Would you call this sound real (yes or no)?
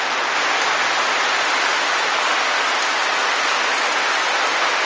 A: yes